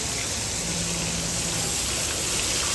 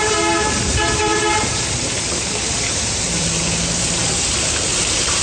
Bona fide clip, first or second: first